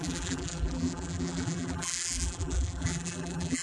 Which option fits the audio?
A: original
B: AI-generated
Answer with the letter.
B